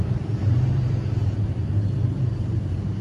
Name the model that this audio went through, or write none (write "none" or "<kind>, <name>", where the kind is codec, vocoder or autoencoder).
vocoder, BigVGAN v2